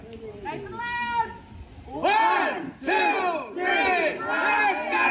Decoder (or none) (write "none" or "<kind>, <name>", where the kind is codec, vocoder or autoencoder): none